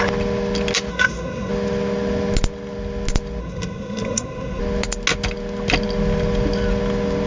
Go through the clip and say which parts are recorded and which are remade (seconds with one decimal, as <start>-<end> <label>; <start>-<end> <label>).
0.0-0.9 recorded; 0.9-1.5 remade; 1.5-3.4 recorded; 3.4-4.6 remade; 4.6-7.3 recorded